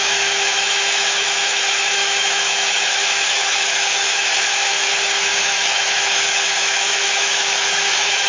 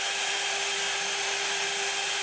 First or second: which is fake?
first